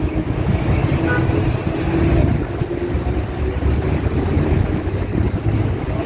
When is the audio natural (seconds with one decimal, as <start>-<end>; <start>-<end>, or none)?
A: 0.8-4.5; 5.1-6.1